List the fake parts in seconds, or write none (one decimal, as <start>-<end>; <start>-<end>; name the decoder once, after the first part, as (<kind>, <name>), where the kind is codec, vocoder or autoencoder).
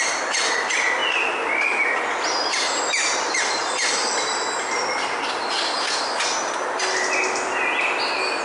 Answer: none